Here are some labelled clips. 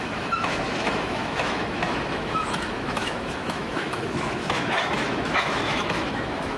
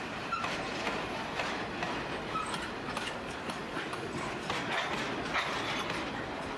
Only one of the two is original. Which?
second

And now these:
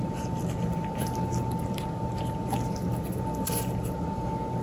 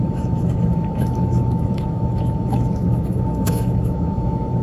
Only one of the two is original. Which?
first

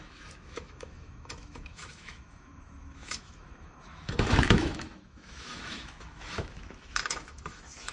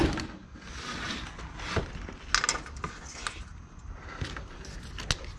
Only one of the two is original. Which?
second